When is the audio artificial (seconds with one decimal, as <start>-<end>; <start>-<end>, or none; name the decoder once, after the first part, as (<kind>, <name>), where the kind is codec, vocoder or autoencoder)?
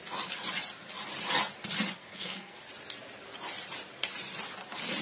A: 2.0-2.6 (codec, SNAC)